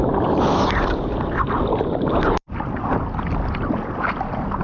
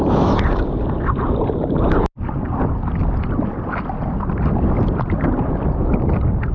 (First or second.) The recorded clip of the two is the second